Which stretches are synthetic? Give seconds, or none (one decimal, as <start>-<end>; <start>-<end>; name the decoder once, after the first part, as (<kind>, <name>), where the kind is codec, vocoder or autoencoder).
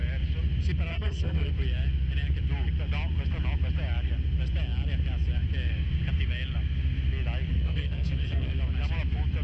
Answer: 0.9-1.5 (codec, SNAC); 7.5-8.6